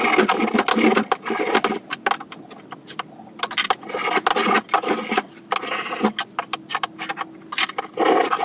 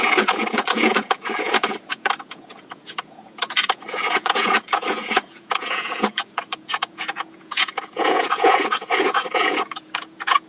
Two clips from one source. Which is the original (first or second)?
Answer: first